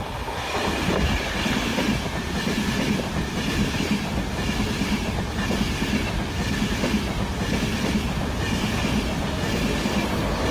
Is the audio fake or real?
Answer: real